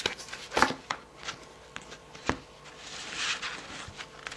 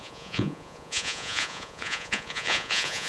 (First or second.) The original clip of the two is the first